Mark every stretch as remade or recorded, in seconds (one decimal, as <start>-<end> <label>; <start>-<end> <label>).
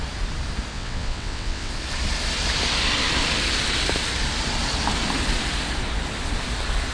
0.0-0.7 recorded; 0.7-1.7 remade; 1.7-6.9 recorded